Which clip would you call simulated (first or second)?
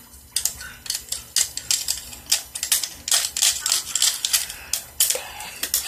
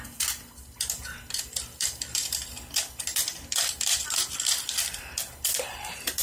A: second